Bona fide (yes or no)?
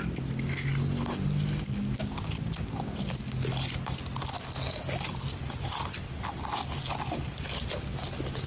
yes